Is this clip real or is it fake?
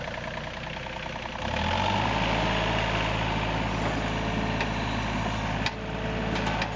real